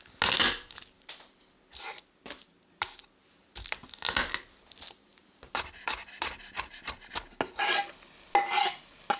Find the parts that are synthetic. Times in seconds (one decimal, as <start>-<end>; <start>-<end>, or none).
none

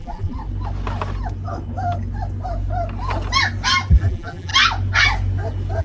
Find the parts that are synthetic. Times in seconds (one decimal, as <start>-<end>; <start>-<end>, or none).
0.0-0.4; 3.9-4.5